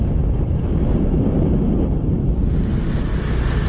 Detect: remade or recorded recorded